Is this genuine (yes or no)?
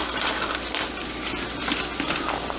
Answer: yes